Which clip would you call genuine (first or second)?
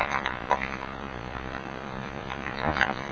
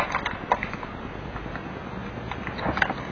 second